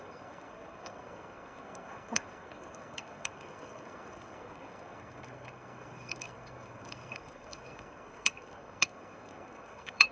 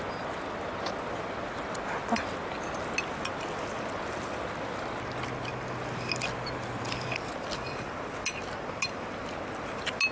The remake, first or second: first